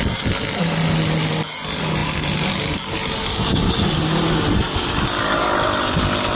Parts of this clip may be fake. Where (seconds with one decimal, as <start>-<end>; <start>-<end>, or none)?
none